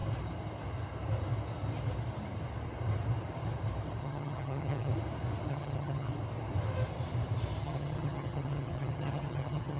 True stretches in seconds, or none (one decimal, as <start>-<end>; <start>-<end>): 0.0-4.0; 4.9-5.5; 6.1-7.6